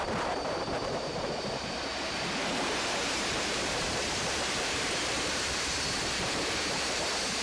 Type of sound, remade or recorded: remade